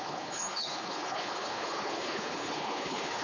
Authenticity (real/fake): fake